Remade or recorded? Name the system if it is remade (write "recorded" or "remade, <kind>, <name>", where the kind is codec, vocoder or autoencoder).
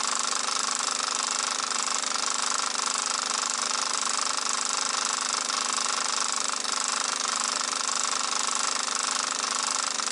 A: recorded